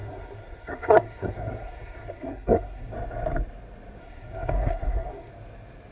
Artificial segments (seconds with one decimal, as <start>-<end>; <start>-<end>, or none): 0.0-2.9; 4.0-5.3